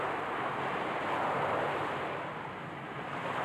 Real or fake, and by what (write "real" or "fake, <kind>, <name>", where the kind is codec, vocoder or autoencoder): real